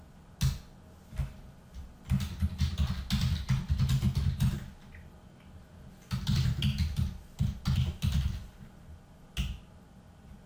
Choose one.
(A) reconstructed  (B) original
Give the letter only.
B